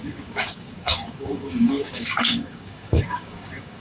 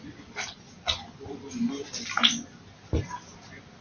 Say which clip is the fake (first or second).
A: first